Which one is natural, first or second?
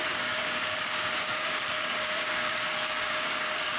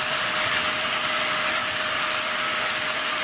second